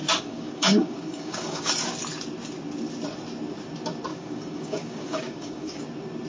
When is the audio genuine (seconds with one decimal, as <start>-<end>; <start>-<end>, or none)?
1.7-4.1; 5.8-6.3